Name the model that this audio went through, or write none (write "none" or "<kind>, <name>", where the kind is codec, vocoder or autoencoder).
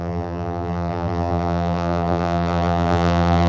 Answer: vocoder, BigVGAN v2